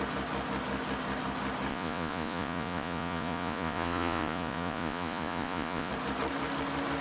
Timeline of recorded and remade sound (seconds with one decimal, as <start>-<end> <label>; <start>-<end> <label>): 0.0-1.7 recorded; 1.7-5.9 remade; 5.9-7.0 recorded